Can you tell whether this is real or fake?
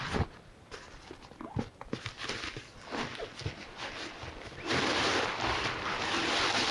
real